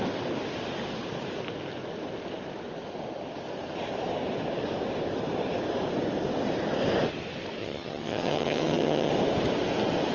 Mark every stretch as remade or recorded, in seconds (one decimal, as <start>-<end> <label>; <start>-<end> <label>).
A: 0.0-7.6 recorded; 7.6-9.1 remade; 9.1-10.1 recorded